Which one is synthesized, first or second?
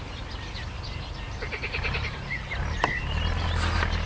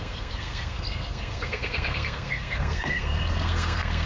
second